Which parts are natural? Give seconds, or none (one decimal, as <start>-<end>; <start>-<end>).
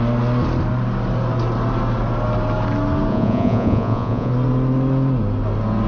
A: 0.0-3.1; 4.3-5.9